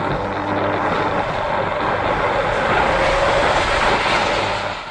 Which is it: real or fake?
real